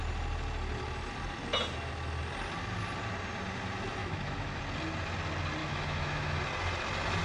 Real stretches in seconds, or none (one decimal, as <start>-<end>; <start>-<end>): 0.0-4.0; 4.6-5.6; 6.4-7.2